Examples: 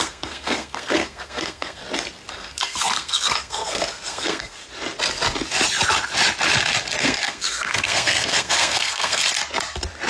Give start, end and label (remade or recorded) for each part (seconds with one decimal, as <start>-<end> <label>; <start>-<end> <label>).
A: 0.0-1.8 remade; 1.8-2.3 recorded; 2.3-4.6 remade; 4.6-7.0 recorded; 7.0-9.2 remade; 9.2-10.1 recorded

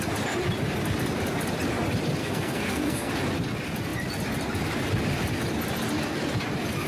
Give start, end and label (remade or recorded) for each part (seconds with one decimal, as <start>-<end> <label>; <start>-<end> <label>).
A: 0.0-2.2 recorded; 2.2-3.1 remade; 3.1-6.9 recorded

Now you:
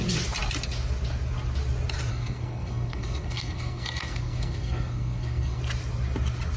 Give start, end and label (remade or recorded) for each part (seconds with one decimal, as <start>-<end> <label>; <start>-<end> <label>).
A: 0.0-2.1 recorded; 2.1-5.6 remade; 5.6-6.6 recorded

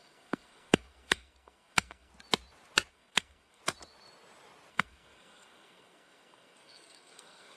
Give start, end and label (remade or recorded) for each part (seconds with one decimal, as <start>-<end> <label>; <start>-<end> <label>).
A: 0.0-2.1 remade; 2.1-2.9 recorded; 2.9-3.6 remade; 3.6-4.7 recorded; 4.7-7.6 remade